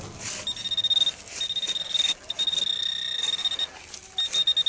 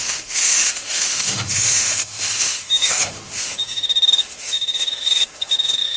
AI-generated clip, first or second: second